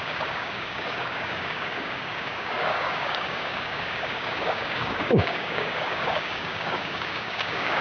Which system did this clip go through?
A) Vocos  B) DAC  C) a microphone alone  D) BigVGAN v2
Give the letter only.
B